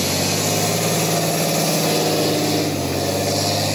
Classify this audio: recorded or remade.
recorded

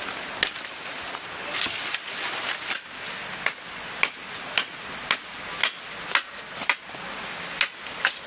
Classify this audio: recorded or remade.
recorded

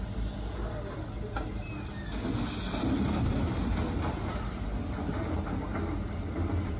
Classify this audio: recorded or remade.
recorded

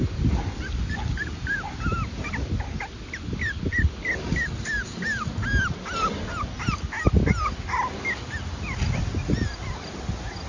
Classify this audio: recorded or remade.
recorded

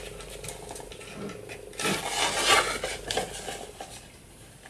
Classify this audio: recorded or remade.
recorded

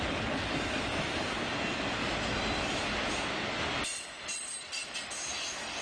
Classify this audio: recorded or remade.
recorded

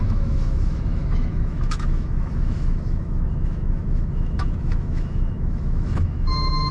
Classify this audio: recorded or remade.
remade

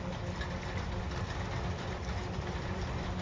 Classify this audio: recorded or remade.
recorded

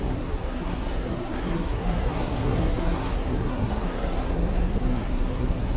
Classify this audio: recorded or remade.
remade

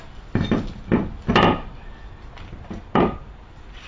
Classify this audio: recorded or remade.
recorded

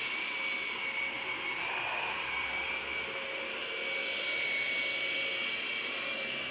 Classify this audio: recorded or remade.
recorded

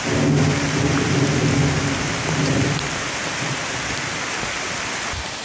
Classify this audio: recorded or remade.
recorded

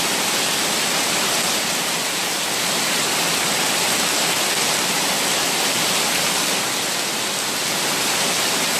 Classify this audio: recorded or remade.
recorded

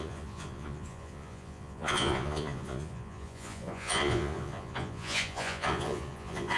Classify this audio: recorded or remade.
remade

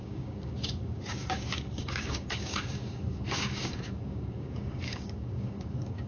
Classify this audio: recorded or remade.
remade